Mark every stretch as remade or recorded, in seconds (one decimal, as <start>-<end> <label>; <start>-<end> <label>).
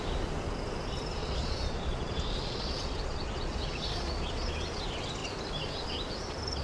0.0-1.2 recorded; 1.2-4.5 remade; 4.5-6.6 recorded